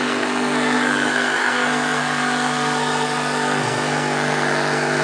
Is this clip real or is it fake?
fake